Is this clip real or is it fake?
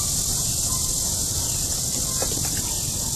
real